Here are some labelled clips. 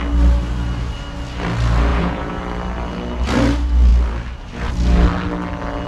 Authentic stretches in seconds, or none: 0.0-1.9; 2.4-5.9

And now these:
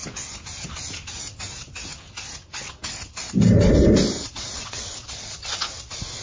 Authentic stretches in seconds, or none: 0.0-4.2; 5.6-6.2

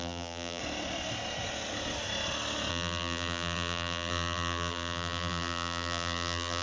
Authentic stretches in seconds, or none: 0.6-2.7

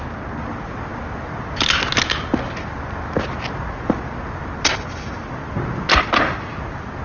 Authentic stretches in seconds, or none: 0.0-7.0

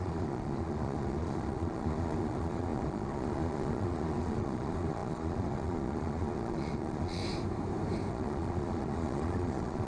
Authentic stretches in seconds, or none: 7.2-8.1

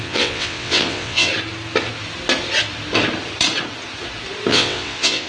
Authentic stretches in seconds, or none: 1.3-4.5

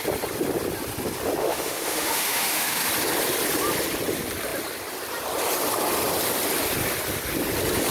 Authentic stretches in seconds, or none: 0.0-1.4; 2.9-7.9